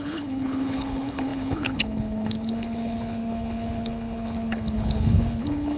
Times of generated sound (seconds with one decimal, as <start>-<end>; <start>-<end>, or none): 0.0-5.8